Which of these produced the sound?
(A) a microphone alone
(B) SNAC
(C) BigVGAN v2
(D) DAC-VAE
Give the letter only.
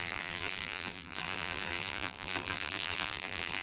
C